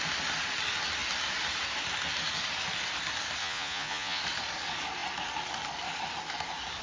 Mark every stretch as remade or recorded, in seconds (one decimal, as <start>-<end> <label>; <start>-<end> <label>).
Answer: 0.0-3.4 recorded; 3.4-4.2 remade; 4.2-6.8 recorded